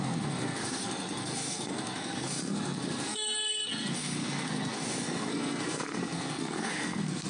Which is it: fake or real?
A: fake